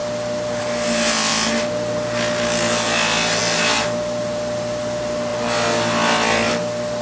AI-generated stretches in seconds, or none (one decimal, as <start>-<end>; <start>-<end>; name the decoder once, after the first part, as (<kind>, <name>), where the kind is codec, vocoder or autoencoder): none